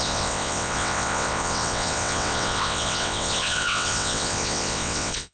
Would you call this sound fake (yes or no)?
yes